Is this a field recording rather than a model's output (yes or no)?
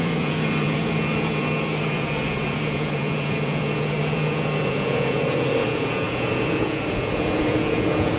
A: no